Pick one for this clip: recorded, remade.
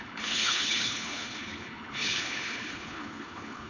remade